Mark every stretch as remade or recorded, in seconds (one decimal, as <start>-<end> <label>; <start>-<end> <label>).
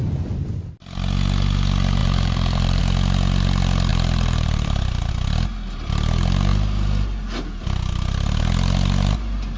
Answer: 0.0-2.0 recorded; 2.0-2.8 remade; 2.8-3.9 recorded; 3.9-5.1 remade; 5.1-9.6 recorded